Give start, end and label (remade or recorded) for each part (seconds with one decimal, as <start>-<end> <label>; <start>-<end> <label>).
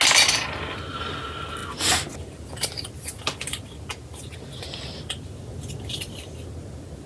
0.0-7.1 recorded